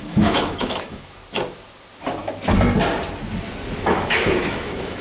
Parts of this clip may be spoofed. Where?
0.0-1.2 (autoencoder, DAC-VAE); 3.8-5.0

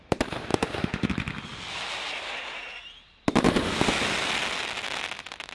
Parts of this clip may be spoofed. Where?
0.5-1.1 (autoencoder, DAC-VAE)